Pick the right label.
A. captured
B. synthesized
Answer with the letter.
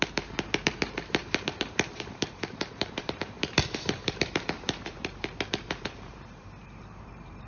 B